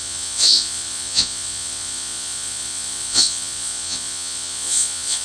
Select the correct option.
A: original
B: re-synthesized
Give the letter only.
B